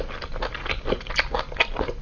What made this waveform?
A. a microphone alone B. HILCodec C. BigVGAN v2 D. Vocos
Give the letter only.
A